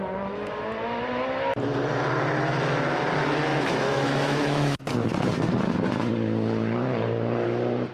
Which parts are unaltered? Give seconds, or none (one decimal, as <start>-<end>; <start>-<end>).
0.0-3.5; 4.8-7.9